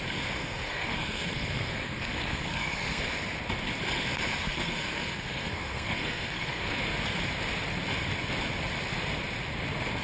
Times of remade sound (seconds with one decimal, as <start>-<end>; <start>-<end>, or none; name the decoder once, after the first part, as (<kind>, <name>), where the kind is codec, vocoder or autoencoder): 0.4-3.0 (codec, SNAC); 4.5-6.8